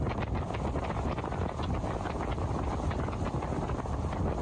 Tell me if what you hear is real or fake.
real